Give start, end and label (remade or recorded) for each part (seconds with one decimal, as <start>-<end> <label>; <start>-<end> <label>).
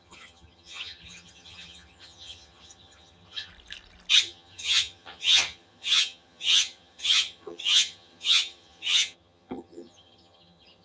0.0-3.5 remade; 3.5-4.2 recorded; 4.2-10.8 remade